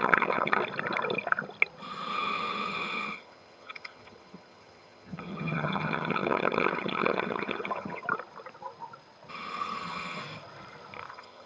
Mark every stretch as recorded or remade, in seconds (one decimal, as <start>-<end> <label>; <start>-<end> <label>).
0.0-0.6 remade; 0.6-2.1 recorded; 2.1-8.0 remade; 8.0-9.3 recorded; 9.3-10.2 remade; 10.2-11.1 recorded; 11.1-11.5 remade